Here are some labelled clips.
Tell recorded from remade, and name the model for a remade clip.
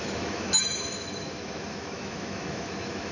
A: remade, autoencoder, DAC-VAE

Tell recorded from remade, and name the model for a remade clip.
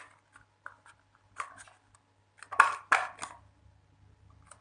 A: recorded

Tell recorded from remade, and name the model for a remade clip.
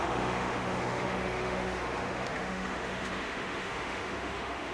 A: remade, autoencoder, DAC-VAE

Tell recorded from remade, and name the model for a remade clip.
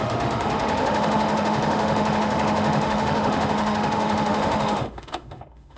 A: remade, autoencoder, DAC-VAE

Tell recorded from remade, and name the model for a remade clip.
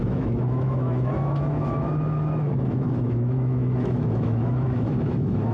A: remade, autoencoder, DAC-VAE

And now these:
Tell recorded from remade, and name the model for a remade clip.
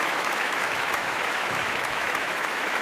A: remade, autoencoder, DAC-VAE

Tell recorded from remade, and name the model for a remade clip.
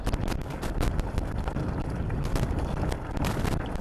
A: recorded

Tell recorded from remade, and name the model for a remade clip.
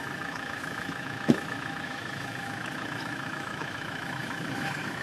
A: remade, autoencoder, DAC-VAE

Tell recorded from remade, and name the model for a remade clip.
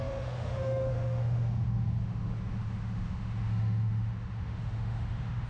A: remade, autoencoder, DAC-VAE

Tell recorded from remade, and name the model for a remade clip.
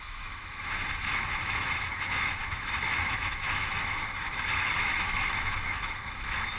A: remade, autoencoder, DAC-VAE